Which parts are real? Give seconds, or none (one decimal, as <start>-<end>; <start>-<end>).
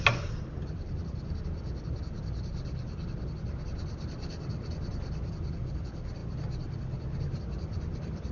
0.0-8.3